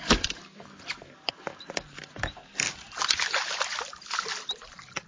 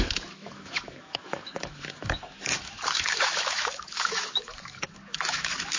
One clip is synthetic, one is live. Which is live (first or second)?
first